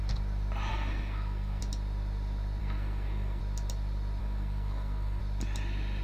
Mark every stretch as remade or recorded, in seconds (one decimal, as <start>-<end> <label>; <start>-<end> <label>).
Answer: 0.0-0.7 recorded; 0.7-1.6 remade; 1.6-2.6 recorded; 2.6-3.4 remade; 3.4-4.2 recorded; 4.2-5.2 remade; 5.2-6.0 recorded